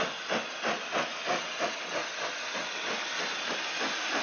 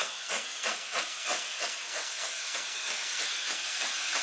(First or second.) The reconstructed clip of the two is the second